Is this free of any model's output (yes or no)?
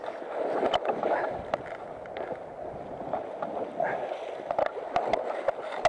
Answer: yes